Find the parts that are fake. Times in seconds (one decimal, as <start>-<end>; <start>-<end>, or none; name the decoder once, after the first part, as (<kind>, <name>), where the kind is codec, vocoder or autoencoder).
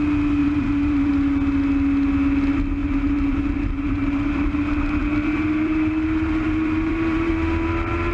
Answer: 0.4-1.1 (vocoder, BigVGAN v2); 2.8-7.3